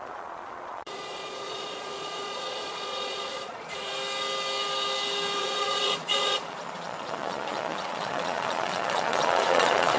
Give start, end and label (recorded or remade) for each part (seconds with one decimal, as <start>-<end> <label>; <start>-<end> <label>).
0.0-3.9 remade; 3.9-5.4 recorded; 5.4-10.0 remade